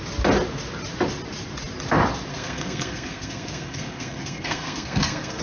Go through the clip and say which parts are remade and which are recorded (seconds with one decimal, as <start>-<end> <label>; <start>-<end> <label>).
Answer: 0.0-2.3 recorded; 2.3-5.4 remade